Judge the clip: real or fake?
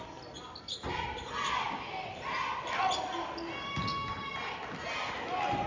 real